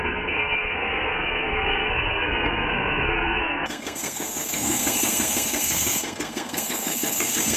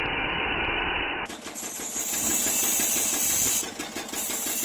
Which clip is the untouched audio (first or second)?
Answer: second